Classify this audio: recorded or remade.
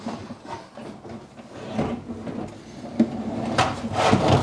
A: recorded